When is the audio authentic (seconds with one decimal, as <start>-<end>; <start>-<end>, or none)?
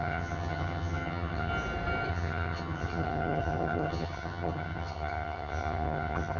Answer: 1.5-2.1